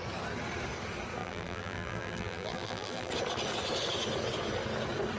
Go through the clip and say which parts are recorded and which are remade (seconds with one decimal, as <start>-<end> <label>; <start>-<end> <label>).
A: 0.0-1.2 recorded; 1.2-3.1 remade; 3.1-5.2 recorded